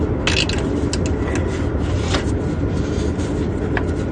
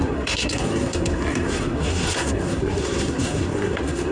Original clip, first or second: first